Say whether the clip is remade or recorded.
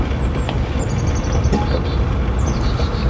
recorded